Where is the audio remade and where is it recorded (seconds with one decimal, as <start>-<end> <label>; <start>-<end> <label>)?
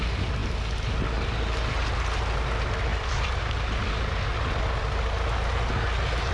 0.0-2.9 recorded; 2.9-3.4 remade; 3.4-6.3 recorded